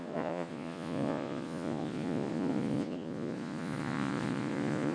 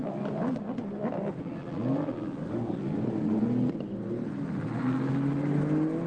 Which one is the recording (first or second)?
second